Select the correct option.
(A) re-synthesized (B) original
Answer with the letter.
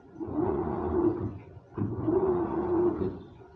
A